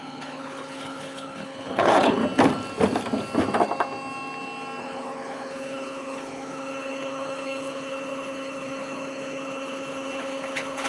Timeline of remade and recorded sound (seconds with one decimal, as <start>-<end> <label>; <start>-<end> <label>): 0.0-2.2 remade; 2.2-4.8 recorded; 4.8-10.9 remade